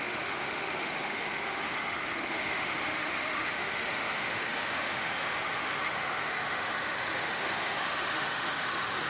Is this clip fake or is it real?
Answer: fake